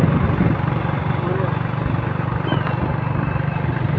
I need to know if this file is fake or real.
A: real